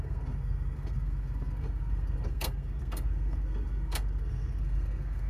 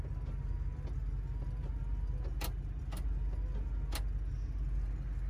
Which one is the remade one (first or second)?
first